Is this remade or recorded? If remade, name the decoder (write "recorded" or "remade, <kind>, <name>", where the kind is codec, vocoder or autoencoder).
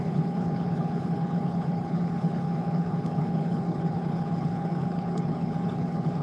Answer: remade, codec, HILCodec